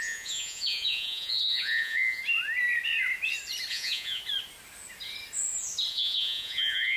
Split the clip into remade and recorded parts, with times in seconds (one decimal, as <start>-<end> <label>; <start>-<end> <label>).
0.0-2.2 remade; 2.2-3.7 recorded; 3.7-4.2 remade; 4.2-5.9 recorded; 5.9-7.0 remade